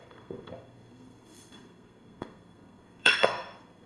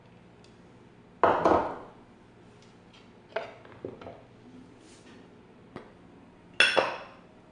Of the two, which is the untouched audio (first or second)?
second